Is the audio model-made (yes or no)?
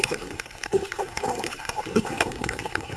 yes